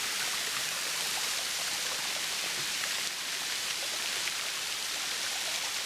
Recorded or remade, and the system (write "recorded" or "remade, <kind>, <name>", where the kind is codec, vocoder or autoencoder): remade, vocoder, BigVGAN v2